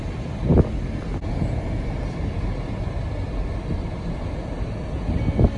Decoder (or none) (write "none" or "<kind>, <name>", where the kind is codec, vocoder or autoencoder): none